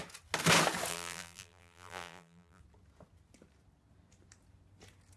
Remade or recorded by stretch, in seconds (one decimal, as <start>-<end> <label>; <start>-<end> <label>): 0.0-0.9 recorded; 0.9-2.6 remade; 2.6-5.2 recorded